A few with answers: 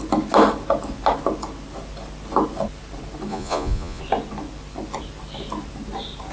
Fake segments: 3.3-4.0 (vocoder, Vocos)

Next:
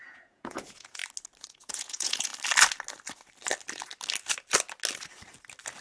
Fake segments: 0.0-1.0 (vocoder, Vocos); 1.5-2.3

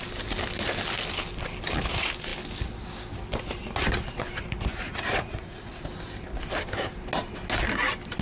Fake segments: 4.7-5.8 (vocoder, Vocos)

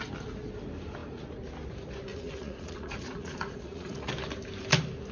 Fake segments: 2.1-4.1 (vocoder, Vocos)

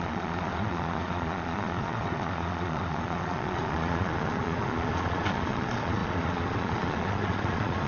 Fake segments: 0.0-7.9 (vocoder, Vocos)

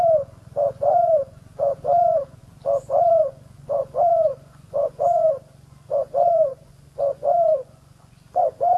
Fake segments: 0.0-8.8 (vocoder, Vocos)

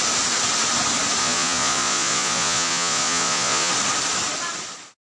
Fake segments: 1.2-3.7 (vocoder, Vocos)

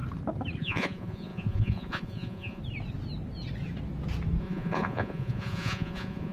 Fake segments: 0.6-2.6 (vocoder, Vocos); 4.4-6.3